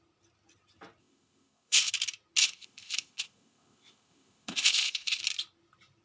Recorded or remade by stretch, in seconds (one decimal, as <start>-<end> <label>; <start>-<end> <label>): 0.0-1.0 recorded; 1.0-1.9 remade; 1.9-2.4 recorded; 2.4-5.2 remade; 5.2-6.0 recorded